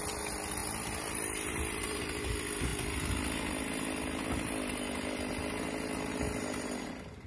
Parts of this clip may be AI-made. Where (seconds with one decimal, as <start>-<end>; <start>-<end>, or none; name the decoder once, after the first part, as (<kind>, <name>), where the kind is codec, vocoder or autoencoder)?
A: 0.6-2.0 (vocoder, BigVGAN v2)